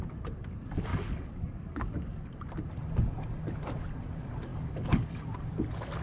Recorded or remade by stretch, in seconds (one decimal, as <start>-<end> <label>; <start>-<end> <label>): 0.0-0.9 recorded; 0.9-2.3 remade; 2.3-4.5 recorded; 4.5-5.2 remade; 5.2-6.0 recorded